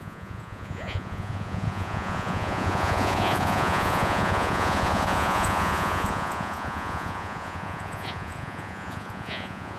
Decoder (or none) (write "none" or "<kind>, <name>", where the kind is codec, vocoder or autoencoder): vocoder, Vocos